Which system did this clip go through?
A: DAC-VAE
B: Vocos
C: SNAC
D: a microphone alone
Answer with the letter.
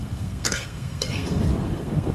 C